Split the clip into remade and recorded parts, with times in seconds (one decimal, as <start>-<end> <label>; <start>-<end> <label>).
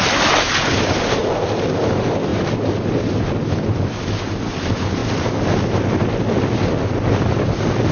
0.0-7.9 recorded